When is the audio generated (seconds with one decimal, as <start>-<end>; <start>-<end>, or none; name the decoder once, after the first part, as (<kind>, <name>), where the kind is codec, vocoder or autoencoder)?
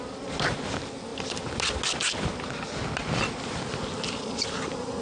none